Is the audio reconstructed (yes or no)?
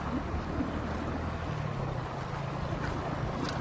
no